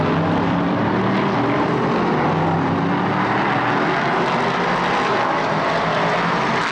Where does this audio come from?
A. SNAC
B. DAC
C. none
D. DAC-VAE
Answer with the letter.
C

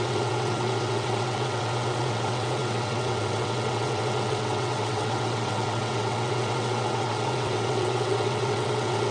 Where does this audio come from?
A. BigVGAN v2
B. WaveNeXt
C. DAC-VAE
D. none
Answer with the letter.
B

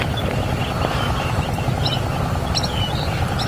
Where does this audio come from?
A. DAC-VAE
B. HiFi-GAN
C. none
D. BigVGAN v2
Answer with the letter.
C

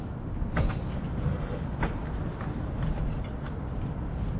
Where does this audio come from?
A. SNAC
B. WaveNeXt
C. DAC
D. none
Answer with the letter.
D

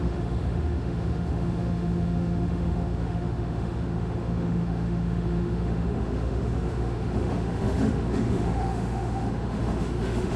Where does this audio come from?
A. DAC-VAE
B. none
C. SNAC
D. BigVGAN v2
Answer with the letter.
A